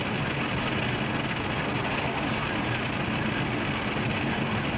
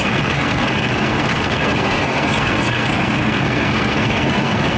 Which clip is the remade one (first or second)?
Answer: second